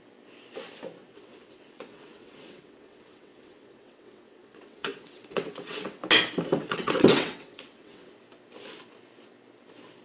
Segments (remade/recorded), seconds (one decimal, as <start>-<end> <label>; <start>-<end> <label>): 0.0-1.0 recorded; 1.0-6.0 remade; 6.0-6.5 recorded; 6.5-8.1 remade; 8.1-10.0 recorded